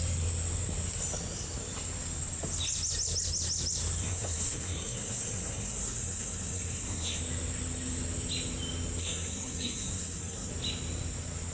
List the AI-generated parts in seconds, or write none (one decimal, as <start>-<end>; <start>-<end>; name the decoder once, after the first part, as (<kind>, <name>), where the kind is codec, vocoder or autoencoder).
4.0-7.2 (codec, SNAC); 9.0-10.5